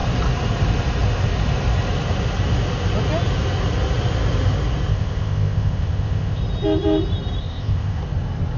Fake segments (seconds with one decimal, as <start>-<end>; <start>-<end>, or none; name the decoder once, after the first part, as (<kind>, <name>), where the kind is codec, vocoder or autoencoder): 4.9-6.4 (codec, ZipCodec); 7.4-8.0